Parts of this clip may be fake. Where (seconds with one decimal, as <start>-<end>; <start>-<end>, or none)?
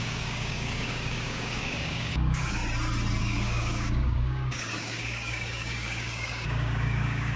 0.0-2.6; 3.2-7.4